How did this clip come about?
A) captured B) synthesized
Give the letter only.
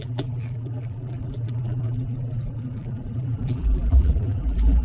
B